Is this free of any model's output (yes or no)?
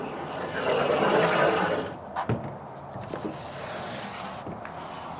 yes